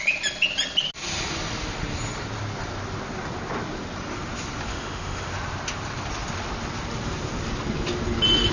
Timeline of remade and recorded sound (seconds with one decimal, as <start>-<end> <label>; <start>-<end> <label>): 0.0-4.7 recorded; 4.7-5.3 remade; 5.3-8.5 recorded